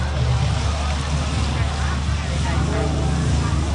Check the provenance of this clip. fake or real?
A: real